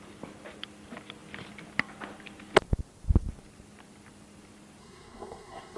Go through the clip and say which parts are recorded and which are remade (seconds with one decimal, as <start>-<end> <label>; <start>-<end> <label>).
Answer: 0.0-4.8 recorded; 4.8-5.8 remade